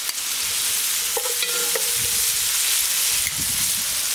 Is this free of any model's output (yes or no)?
yes